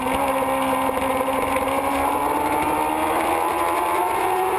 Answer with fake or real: real